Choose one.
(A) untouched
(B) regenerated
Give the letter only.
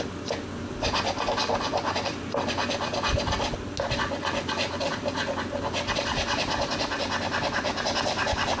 A